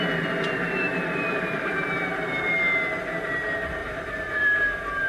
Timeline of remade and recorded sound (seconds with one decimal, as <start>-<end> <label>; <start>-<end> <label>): 0.0-0.9 recorded; 0.9-1.7 remade; 1.7-3.8 recorded; 3.8-5.1 remade